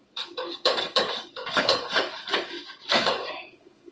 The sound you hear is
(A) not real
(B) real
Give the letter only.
A